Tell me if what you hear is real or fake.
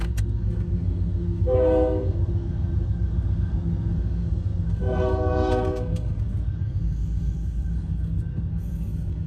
fake